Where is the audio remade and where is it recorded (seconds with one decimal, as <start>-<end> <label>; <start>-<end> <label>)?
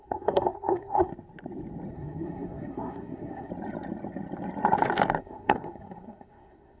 0.0-1.1 remade; 1.1-1.9 recorded; 1.9-3.5 remade; 3.5-5.2 recorded; 5.2-6.8 remade